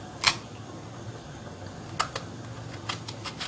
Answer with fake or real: real